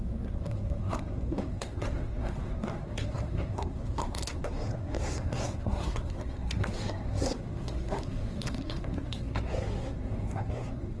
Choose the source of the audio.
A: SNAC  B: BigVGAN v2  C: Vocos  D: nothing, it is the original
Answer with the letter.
A